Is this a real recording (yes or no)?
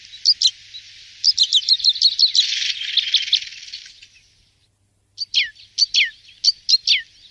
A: yes